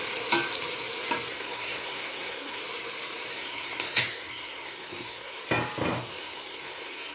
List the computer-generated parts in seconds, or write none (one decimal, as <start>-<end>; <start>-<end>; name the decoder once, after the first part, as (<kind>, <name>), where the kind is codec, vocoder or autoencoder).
1.3-2.6 (codec, SNAC); 3.3-5.4; 6.0-7.1